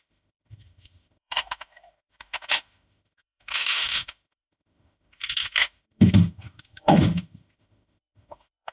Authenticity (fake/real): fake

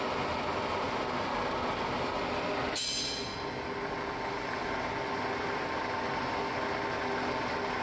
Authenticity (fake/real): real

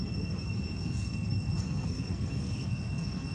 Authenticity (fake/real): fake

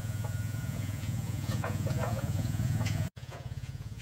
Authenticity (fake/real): fake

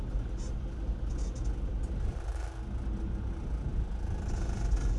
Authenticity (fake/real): real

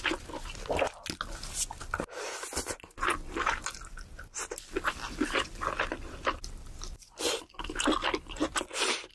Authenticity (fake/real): real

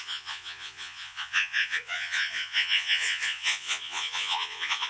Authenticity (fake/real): fake